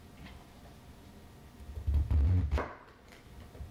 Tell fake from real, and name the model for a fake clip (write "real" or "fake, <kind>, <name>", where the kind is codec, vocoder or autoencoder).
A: real